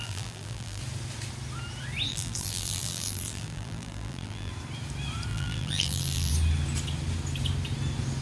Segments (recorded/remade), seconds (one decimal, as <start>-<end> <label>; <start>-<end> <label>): 0.0-0.8 remade; 0.8-2.1 recorded; 2.1-4.5 remade; 4.5-5.3 recorded; 5.3-6.3 remade; 6.3-8.2 recorded